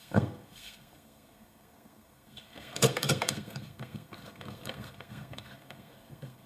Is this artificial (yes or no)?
yes